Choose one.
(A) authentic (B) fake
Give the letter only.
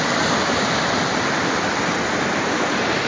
A